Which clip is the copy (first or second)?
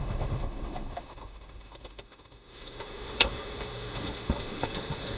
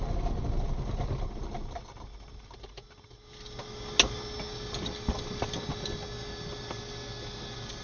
first